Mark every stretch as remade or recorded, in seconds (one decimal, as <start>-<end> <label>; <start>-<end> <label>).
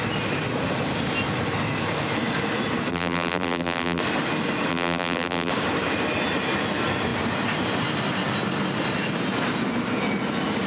0.0-2.9 recorded; 2.9-4.0 remade; 4.0-4.7 recorded; 4.7-5.5 remade; 5.5-10.7 recorded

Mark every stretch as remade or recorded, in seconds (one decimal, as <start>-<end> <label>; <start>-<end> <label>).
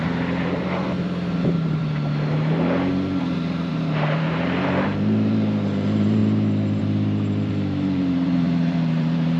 0.0-1.8 remade; 1.8-3.2 recorded; 3.2-9.4 remade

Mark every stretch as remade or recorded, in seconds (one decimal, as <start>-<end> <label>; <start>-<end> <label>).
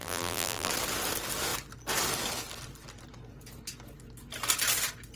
0.0-0.7 remade; 0.7-5.2 recorded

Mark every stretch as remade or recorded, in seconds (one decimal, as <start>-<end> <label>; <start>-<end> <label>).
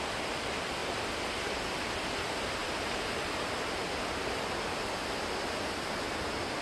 0.0-2.6 recorded; 2.6-3.6 remade; 3.6-6.6 recorded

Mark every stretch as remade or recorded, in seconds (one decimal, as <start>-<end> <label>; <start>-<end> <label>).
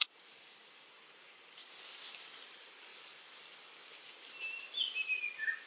0.0-1.7 remade; 1.7-2.9 recorded; 2.9-5.7 remade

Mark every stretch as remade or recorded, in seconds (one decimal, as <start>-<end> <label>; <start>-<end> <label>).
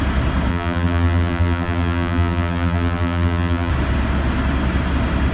0.0-0.5 recorded; 0.5-3.7 remade; 3.7-5.3 recorded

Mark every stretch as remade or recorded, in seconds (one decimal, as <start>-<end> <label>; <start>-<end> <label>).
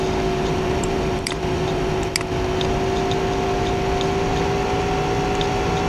0.0-0.4 recorded; 0.4-2.1 remade; 2.1-5.9 recorded